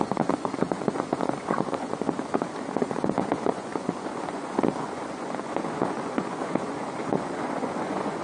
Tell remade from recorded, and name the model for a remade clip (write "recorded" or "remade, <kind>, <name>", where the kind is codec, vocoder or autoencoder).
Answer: remade, vocoder, Vocos